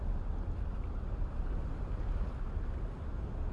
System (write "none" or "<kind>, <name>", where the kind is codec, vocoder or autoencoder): none